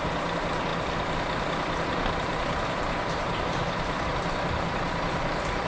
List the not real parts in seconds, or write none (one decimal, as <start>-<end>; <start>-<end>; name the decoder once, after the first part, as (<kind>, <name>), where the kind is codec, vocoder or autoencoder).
0.0-5.7 (vocoder, BigVGAN v2)